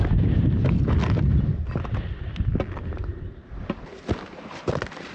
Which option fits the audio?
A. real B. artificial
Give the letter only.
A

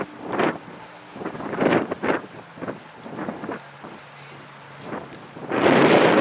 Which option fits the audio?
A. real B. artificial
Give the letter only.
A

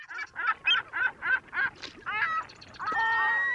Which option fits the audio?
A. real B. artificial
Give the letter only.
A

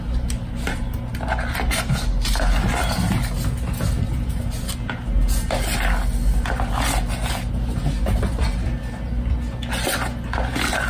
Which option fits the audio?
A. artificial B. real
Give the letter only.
B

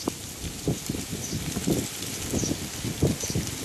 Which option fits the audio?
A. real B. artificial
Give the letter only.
A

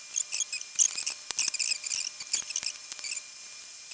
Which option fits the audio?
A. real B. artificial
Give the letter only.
A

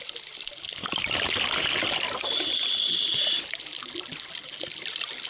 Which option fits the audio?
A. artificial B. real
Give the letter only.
B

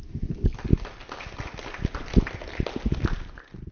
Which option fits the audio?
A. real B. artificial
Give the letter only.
A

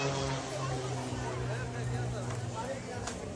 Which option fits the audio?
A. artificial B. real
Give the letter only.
B